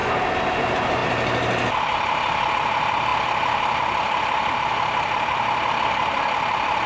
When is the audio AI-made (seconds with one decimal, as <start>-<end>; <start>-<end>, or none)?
none